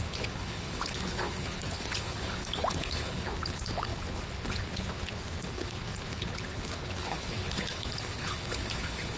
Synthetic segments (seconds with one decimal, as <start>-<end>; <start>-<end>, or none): 0.0-9.2